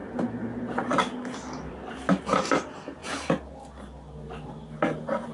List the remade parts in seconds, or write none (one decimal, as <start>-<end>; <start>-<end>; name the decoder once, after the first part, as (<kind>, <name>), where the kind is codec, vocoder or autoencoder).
none